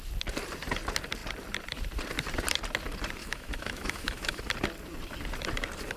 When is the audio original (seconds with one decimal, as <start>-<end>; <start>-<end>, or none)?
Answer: 0.0-3.2; 4.4-6.0